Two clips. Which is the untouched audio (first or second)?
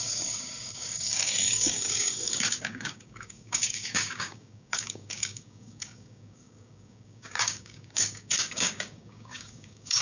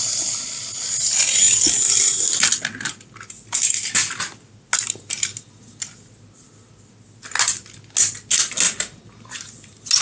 second